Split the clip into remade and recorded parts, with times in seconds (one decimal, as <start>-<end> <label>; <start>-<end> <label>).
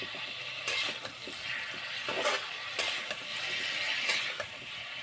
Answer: 0.0-5.0 recorded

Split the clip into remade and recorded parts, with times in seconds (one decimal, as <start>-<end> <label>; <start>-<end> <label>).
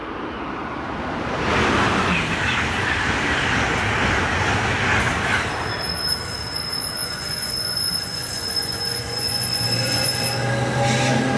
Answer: 0.0-7.0 recorded; 7.0-10.2 remade; 10.2-11.4 recorded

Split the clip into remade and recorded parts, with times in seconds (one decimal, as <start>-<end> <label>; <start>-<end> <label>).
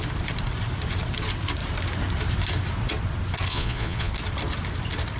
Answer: 0.0-3.5 recorded; 3.5-4.1 remade; 4.1-5.2 recorded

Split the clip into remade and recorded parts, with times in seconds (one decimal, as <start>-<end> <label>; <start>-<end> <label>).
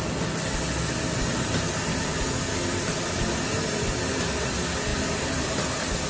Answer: 0.0-6.1 recorded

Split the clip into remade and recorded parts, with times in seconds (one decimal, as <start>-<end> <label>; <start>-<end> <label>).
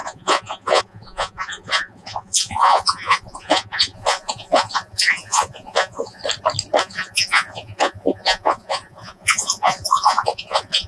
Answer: 0.0-6.2 remade; 6.2-6.8 recorded; 6.8-10.9 remade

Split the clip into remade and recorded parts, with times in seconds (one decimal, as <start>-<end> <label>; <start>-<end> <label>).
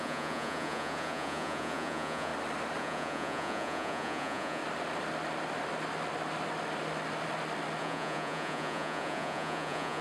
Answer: 0.0-2.3 remade; 2.3-2.8 recorded; 2.8-4.6 remade; 4.6-7.8 recorded; 7.8-10.0 remade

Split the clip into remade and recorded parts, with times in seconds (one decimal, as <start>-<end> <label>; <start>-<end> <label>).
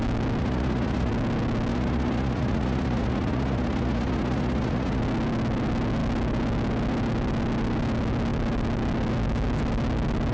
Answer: 0.0-0.4 recorded; 0.4-1.1 remade; 1.1-1.7 recorded; 1.7-5.0 remade; 5.0-10.3 recorded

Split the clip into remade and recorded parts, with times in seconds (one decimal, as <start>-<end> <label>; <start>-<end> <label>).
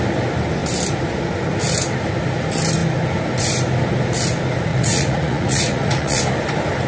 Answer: 0.0-4.7 recorded; 4.7-6.2 remade; 6.2-6.9 recorded